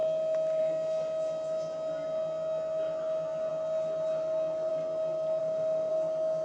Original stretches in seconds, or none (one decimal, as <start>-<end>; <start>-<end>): 0.0-5.4; 5.9-6.4

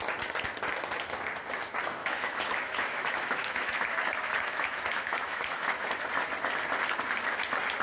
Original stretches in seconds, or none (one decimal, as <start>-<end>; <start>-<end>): 0.0-2.0; 5.9-7.8

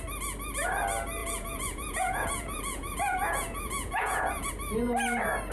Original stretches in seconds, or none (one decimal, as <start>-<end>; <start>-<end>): 0.0-1.2; 4.5-5.5

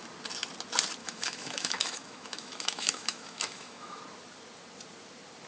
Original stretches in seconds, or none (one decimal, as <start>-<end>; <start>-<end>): 0.0-1.0; 4.0-5.5

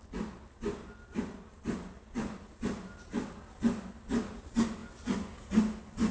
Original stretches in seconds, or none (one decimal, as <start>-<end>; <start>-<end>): 0.0-6.1

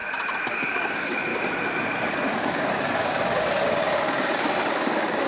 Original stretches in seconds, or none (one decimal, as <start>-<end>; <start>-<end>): 0.0-0.5; 1.3-2.0

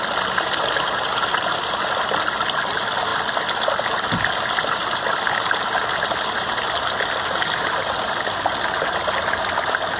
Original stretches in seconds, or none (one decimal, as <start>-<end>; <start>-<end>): 0.0-10.0